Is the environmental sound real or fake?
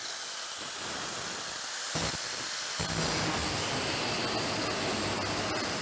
real